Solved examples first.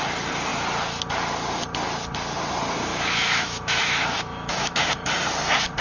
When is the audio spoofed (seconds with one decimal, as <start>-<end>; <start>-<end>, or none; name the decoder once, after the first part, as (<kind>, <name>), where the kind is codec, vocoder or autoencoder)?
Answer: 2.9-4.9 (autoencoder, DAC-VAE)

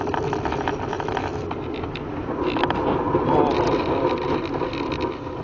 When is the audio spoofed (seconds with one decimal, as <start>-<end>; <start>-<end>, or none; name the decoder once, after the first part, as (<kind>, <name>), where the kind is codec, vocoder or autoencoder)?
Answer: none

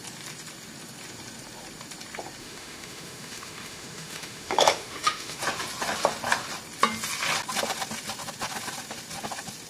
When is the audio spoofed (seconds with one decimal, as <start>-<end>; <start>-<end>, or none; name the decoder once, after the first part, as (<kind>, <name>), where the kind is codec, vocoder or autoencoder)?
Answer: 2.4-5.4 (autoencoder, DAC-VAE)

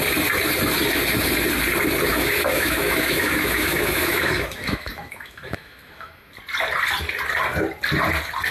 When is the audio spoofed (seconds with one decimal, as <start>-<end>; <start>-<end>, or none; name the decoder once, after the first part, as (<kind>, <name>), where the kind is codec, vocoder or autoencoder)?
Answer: 2.1-6.3 (autoencoder, DAC-VAE)

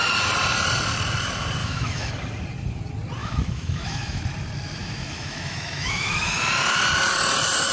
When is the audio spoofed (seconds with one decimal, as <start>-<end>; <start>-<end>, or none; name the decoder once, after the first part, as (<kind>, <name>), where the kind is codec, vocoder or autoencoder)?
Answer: 1.6-2.1 (autoencoder, DAC-VAE); 3.2-4.2; 4.8-6.4

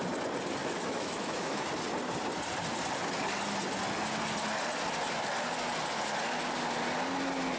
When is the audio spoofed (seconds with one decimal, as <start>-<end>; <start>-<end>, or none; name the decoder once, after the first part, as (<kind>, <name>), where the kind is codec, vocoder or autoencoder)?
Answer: 0.6-1.6 (autoencoder, DAC-VAE)

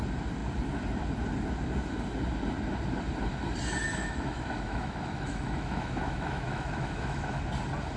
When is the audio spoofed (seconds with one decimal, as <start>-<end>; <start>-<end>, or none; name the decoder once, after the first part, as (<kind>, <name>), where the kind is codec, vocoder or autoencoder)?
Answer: 4.0-7.4 (autoencoder, DAC-VAE)